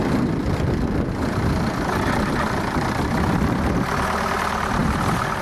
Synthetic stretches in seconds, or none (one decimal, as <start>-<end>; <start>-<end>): none

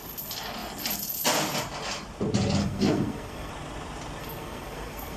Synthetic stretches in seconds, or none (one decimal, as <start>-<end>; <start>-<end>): 2.6-3.5; 4.2-5.2

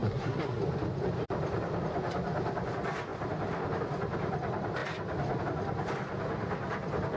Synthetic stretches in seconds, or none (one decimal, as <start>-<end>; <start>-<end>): 0.0-0.6

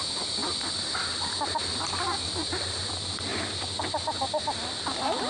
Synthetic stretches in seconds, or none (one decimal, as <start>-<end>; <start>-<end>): 0.4-2.9